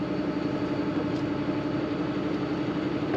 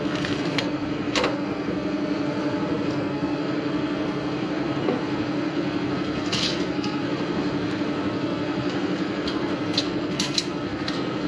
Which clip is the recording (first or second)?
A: first